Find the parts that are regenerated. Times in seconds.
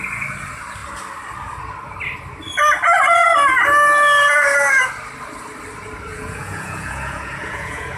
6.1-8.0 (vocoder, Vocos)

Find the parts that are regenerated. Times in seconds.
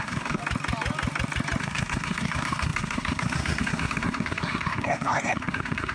0.0-0.4 (codec, SNAC); 1.6-5.9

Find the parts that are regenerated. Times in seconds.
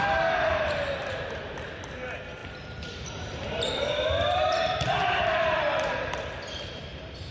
2.4-6.8 (vocoder, BigVGAN v2)